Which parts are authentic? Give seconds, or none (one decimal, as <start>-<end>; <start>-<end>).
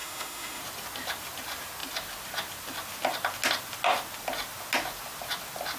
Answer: 0.6-5.8